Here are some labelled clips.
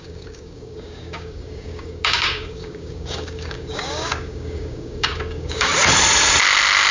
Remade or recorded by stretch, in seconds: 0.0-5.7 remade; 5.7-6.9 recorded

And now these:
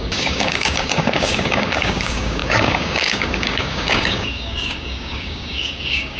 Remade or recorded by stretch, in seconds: 0.0-6.2 remade

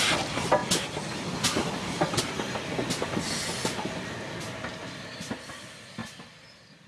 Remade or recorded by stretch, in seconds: 0.0-6.9 recorded

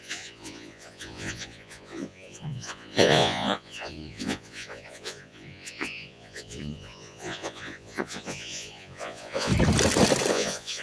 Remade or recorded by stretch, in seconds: 0.0-9.5 remade; 9.5-10.3 recorded; 10.3-10.8 remade

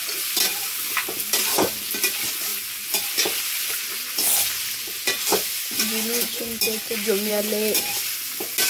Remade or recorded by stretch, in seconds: 0.0-8.7 recorded

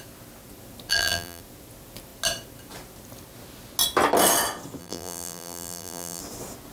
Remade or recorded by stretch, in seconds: 0.0-0.9 recorded; 0.9-1.4 remade; 1.4-4.8 recorded; 4.8-6.2 remade; 6.2-6.7 recorded